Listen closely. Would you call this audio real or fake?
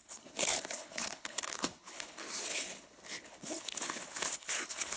fake